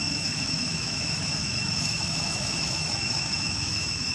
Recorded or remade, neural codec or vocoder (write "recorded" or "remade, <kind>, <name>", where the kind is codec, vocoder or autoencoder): remade, autoencoder, DAC-VAE